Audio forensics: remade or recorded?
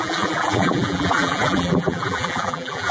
remade